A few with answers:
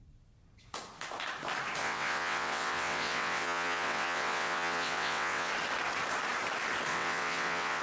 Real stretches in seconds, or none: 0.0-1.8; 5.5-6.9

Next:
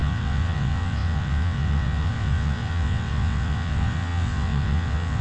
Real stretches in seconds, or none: none

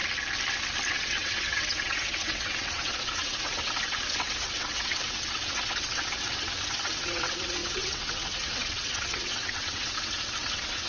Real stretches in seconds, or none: 0.0-0.9

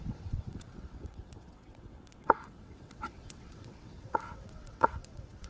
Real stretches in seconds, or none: none

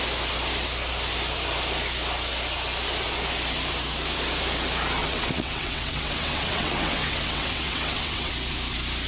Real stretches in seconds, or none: 0.0-5.0; 8.3-9.1

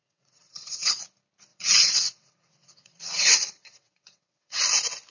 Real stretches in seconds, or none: 1.0-1.5; 4.6-5.1

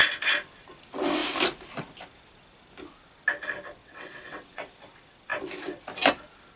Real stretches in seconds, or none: 0.0-3.8; 4.7-6.6